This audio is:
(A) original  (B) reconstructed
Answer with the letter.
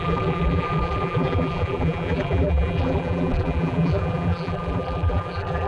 B